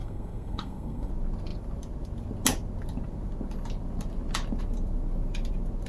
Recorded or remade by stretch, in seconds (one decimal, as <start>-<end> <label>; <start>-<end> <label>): 0.0-1.1 remade; 1.1-5.9 recorded

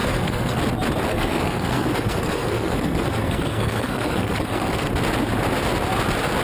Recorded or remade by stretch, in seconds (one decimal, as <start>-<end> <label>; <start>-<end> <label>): 0.0-0.6 remade; 0.6-1.1 recorded; 1.1-4.9 remade; 4.9-6.4 recorded

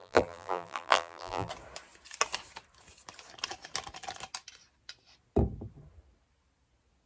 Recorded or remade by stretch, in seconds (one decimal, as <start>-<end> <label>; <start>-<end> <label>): 0.0-1.5 remade; 1.5-7.1 recorded